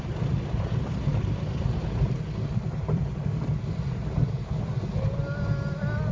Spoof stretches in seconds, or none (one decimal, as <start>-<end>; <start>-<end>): none